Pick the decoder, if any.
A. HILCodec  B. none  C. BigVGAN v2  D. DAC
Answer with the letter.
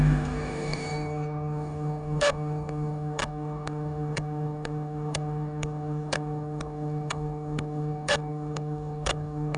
D